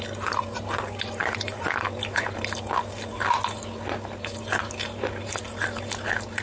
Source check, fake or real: real